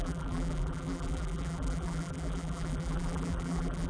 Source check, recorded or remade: remade